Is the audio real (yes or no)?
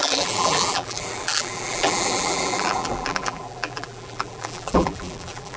no